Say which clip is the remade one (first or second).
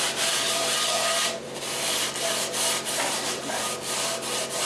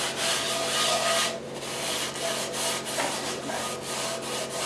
first